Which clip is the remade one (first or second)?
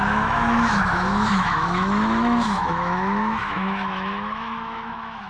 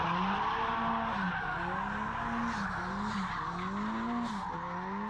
first